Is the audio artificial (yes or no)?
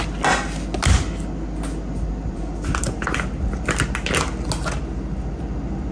no